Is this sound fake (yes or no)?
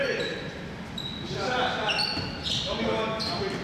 no